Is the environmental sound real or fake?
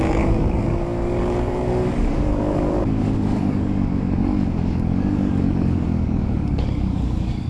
fake